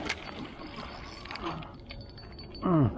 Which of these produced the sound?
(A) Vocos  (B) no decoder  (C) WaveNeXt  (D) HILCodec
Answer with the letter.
B